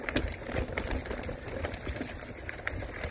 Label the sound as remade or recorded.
recorded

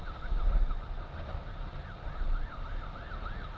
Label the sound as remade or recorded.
recorded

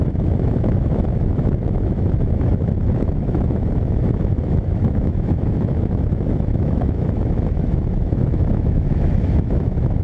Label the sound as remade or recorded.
remade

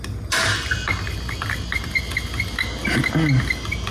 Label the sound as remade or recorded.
recorded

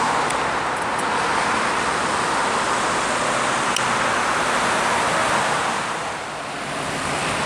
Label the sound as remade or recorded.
recorded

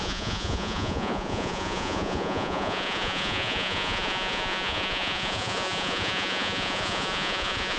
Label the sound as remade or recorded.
remade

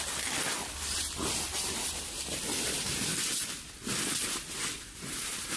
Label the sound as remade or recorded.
recorded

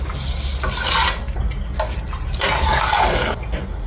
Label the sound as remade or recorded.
recorded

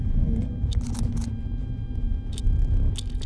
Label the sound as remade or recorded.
recorded